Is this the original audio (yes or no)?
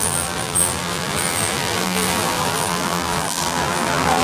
no